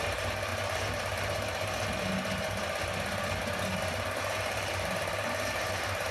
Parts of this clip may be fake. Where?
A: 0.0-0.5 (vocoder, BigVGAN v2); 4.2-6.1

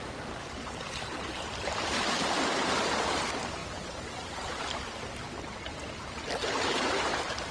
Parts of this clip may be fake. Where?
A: 0.0-5.8 (vocoder, BigVGAN v2); 6.4-7.5

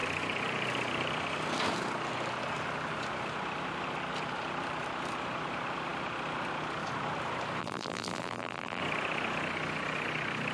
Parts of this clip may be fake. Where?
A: 7.6-8.8 (vocoder, BigVGAN v2)

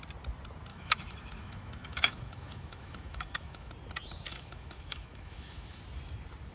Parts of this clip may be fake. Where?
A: 0.7-3.7 (autoencoder, DAC-VAE); 4.3-5.8

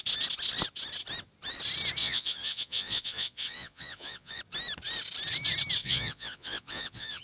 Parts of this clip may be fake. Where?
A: 2.0-4.4 (vocoder, Vocos); 5.8-7.2

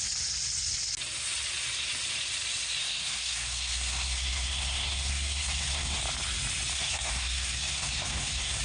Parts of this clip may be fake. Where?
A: 2.8-6.0 (codec, SNAC); 6.7-8.6